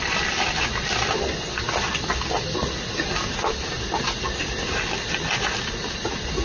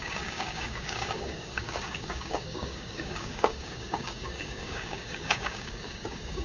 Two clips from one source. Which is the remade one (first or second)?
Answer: second